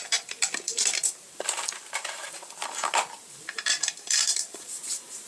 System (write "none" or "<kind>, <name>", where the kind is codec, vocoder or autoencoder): vocoder, BigVGAN v2